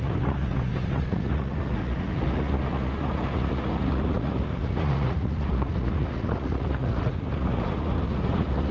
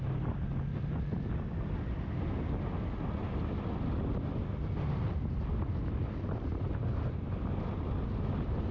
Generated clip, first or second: first